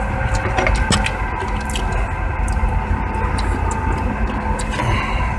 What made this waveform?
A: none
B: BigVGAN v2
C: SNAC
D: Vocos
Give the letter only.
A